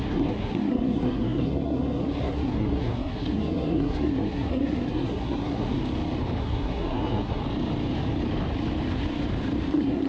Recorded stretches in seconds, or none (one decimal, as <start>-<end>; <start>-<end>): 5.8-6.4; 7.4-9.7